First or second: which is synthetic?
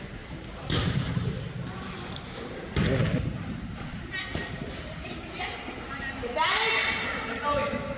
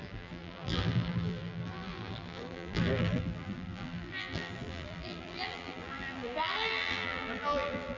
second